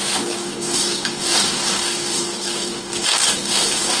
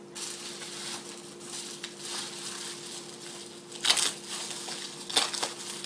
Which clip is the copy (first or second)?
first